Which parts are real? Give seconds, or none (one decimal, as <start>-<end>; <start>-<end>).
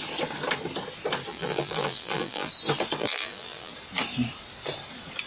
0.0-1.3; 2.5-3.0; 3.7-5.3